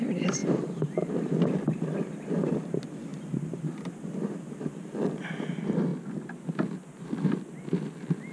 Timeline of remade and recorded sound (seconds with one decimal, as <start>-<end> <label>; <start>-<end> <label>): 0.0-0.4 recorded; 0.4-1.1 remade; 1.1-8.3 recorded